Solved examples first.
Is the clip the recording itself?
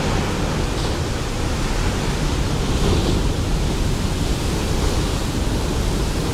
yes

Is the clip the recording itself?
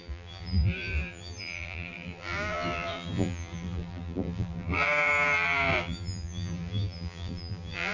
no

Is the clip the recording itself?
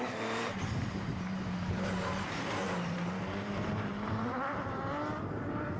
no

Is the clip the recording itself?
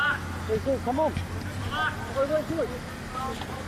yes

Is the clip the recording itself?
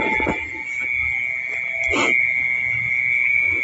yes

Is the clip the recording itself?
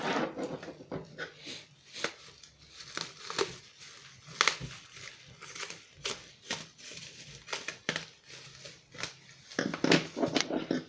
yes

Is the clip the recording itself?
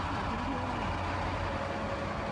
yes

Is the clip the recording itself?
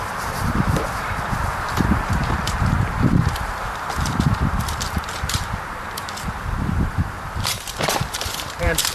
no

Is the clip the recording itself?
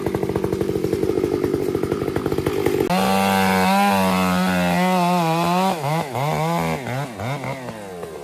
yes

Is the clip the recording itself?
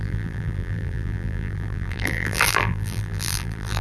no